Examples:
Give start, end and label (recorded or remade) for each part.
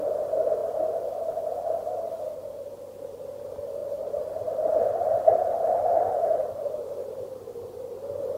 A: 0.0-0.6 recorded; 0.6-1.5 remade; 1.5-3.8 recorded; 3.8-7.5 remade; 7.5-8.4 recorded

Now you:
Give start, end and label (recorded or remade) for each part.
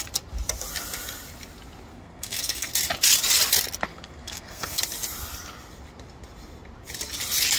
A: 0.0-1.9 recorded; 1.9-2.7 remade; 2.7-3.9 recorded; 3.9-4.8 remade; 4.8-7.6 recorded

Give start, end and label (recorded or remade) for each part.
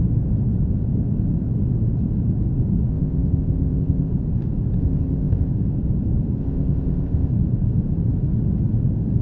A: 0.0-2.9 recorded; 2.9-4.1 remade; 4.1-4.8 recorded; 4.8-5.5 remade; 5.5-6.4 recorded; 6.4-7.3 remade; 7.3-9.2 recorded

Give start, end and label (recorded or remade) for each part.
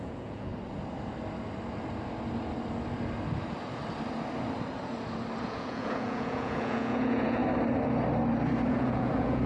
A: 0.0-0.5 remade; 0.5-5.4 recorded; 5.4-7.4 remade; 7.4-8.7 recorded; 8.7-9.5 remade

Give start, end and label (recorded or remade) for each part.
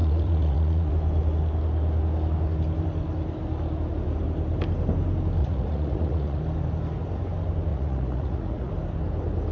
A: 0.0-0.9 remade; 0.9-5.4 recorded; 5.4-6.4 remade; 6.4-7.7 recorded; 7.7-8.7 remade; 8.7-9.5 recorded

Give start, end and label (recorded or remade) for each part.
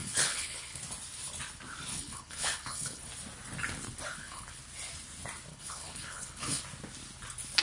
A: 0.0-0.8 remade; 0.8-1.9 recorded; 1.9-3.1 remade; 3.1-4.1 recorded; 4.1-4.6 remade; 4.6-5.5 recorded; 5.5-6.6 remade; 6.6-7.6 recorded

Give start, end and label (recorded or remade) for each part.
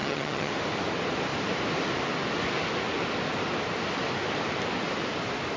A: 0.0-0.5 remade; 0.5-5.6 recorded